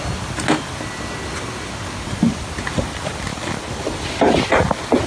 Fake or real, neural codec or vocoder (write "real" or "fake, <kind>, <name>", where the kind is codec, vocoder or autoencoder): real